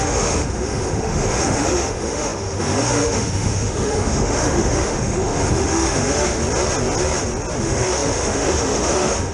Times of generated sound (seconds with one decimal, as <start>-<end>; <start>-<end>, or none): 0.0-6.4; 7.6-9.3